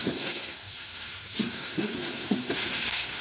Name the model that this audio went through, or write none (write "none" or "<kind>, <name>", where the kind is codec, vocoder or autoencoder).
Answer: codec, SNAC